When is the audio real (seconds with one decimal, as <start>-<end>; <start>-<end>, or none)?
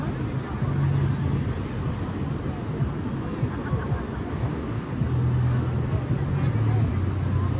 0.0-4.3; 4.9-7.6